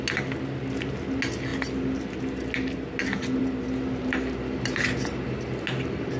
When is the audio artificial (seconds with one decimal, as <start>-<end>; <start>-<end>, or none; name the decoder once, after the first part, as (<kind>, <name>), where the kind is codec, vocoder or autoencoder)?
none

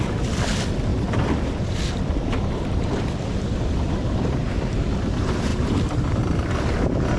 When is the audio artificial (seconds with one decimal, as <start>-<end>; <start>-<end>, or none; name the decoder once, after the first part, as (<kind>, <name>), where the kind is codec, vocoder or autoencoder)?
0.9-4.8 (vocoder, BigVGAN v2); 5.5-6.4

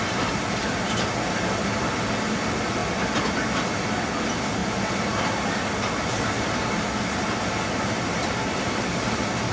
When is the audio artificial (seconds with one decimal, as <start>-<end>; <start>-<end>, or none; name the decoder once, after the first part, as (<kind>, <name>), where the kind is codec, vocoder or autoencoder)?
none

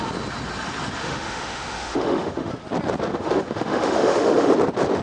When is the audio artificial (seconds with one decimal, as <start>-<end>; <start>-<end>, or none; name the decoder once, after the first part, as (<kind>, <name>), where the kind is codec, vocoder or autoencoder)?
1.0-2.5 (autoencoder, DAC-VAE); 3.1-4.5

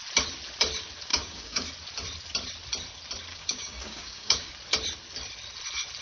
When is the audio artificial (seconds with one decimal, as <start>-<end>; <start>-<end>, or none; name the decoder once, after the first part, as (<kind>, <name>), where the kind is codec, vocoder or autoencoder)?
1.1-1.7 (codec, DAC); 3.3-4.5